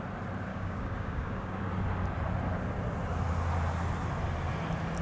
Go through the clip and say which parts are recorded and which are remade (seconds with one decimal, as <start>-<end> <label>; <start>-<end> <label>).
0.0-0.5 recorded; 0.5-1.6 remade; 1.6-5.0 recorded